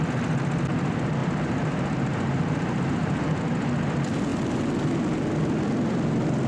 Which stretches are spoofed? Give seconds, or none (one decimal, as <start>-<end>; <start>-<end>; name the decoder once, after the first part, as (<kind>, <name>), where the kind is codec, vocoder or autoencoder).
1.2-3.4 (vocoder, BigVGAN v2)